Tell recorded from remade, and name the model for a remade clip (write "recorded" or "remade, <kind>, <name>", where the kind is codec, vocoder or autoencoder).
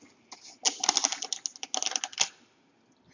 recorded